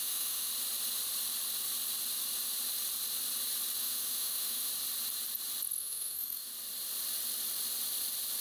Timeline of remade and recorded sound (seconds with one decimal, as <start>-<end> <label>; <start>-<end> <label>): 0.0-0.5 remade; 0.5-3.8 recorded; 3.8-4.7 remade; 4.7-5.8 recorded; 5.8-6.5 remade; 6.5-8.4 recorded